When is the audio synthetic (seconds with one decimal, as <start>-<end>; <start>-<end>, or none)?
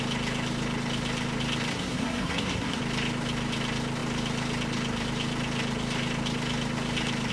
1.7-2.8